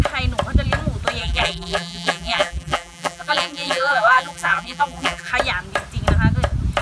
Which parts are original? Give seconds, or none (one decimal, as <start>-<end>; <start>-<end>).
0.0-1.2; 5.3-6.8